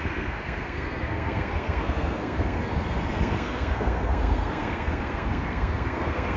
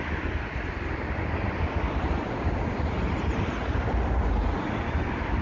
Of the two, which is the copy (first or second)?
first